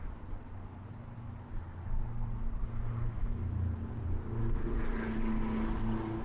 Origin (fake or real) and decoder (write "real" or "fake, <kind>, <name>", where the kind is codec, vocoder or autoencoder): real